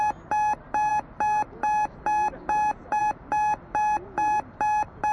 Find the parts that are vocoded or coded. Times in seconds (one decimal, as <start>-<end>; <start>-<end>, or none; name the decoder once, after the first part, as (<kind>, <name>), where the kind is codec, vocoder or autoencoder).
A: none